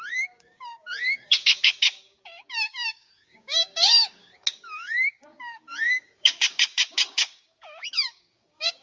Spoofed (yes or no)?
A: yes